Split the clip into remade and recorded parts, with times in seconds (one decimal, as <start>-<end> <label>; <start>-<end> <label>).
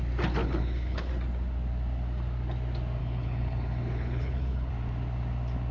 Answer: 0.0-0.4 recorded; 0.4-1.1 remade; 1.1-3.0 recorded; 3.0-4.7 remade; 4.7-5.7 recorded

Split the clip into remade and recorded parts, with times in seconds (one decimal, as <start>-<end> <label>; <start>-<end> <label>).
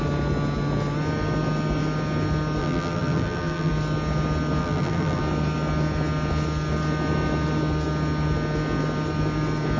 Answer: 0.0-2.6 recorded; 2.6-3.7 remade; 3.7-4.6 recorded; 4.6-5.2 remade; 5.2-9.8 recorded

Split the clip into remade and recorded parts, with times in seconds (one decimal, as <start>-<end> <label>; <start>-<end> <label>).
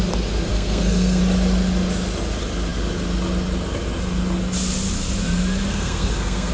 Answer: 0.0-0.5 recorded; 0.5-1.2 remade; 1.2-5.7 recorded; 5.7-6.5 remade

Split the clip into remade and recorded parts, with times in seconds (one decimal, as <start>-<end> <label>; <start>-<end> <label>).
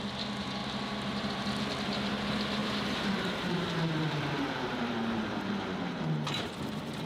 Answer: 0.0-2.6 recorded; 2.6-6.6 remade; 6.6-7.1 recorded